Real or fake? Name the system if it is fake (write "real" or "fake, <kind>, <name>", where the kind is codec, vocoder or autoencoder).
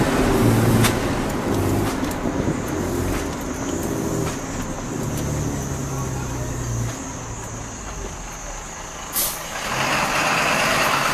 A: real